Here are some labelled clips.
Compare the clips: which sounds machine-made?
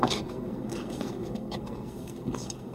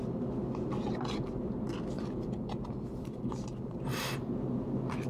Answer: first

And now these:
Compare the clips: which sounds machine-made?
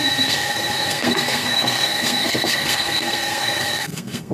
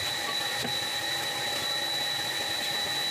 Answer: first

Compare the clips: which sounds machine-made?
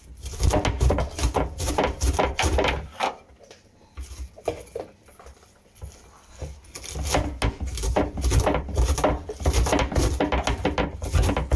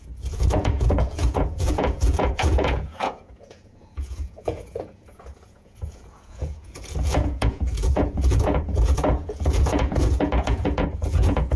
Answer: second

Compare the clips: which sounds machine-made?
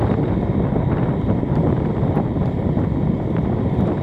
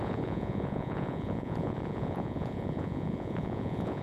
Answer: second